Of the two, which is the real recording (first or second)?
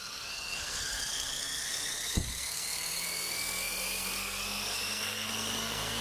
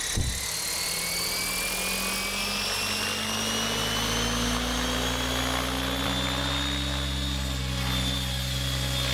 second